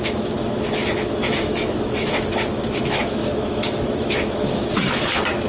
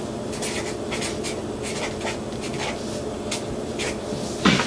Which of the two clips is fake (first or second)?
first